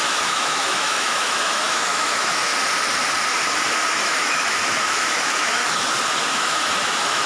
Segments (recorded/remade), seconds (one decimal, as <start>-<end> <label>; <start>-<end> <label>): 0.0-2.5 remade; 2.5-3.9 recorded; 3.9-5.6 remade; 5.6-6.4 recorded; 6.4-7.3 remade

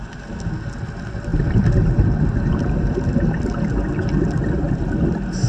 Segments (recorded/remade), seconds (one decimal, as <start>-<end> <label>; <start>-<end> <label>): 0.0-5.5 recorded